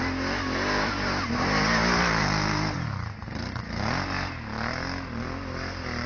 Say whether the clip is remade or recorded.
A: recorded